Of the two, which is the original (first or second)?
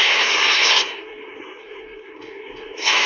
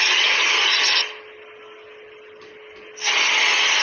second